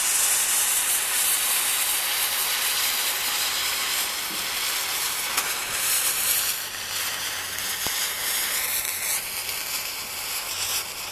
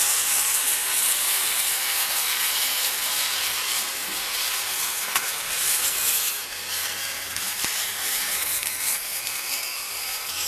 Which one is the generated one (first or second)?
second